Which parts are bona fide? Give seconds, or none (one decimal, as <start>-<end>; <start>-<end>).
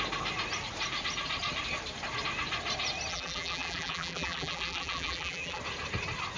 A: 0.0-3.1; 5.6-6.4